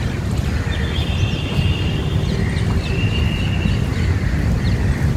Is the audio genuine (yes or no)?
yes